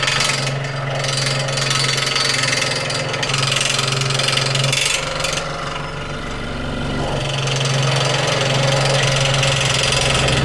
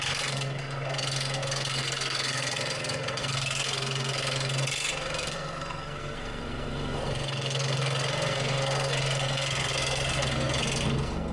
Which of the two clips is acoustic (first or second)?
first